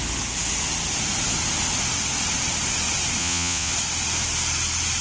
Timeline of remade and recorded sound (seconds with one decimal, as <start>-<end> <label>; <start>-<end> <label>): 0.0-3.2 recorded; 3.2-3.7 remade; 3.7-5.0 recorded